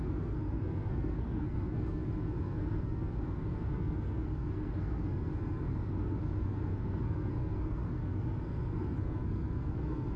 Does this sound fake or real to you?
fake